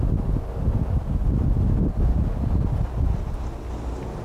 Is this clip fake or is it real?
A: real